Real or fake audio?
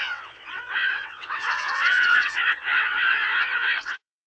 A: fake